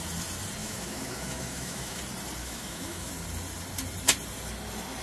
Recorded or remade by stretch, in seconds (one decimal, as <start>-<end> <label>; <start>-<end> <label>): 0.0-0.6 recorded; 0.6-2.0 remade; 2.0-2.4 recorded; 2.4-3.1 remade; 3.1-5.0 recorded